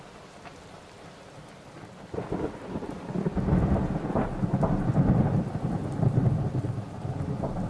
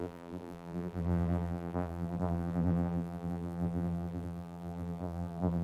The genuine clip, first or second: first